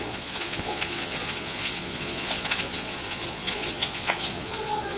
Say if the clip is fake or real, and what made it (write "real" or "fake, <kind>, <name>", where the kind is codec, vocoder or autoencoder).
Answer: fake, vocoder, Vocos